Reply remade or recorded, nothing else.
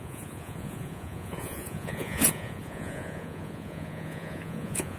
remade